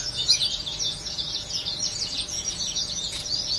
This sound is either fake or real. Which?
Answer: fake